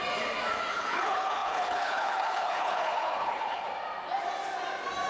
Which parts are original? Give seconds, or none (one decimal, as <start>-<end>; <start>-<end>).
0.0-0.7; 3.7-5.1